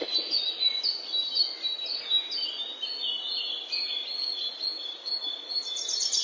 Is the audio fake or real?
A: real